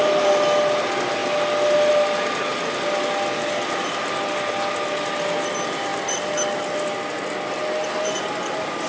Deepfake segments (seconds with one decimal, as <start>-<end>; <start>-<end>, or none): none